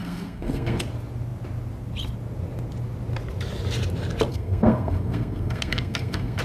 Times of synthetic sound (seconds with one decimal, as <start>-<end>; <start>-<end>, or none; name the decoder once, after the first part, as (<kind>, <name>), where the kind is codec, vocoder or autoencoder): 0.0-0.8 (codec, SNAC); 4.3-6.4